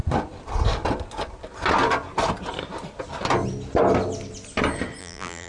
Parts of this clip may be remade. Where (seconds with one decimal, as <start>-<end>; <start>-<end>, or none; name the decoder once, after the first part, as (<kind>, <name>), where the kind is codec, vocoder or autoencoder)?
5.0-5.5 (vocoder, BigVGAN v2)